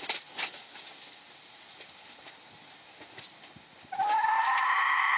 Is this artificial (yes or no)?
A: no